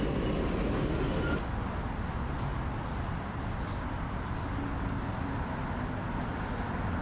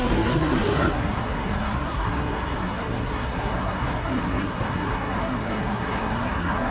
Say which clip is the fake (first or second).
second